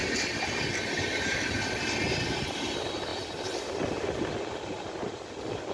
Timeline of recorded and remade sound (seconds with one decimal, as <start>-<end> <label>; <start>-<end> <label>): 0.0-0.6 remade; 0.6-5.7 recorded